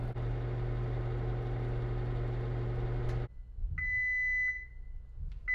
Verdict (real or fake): real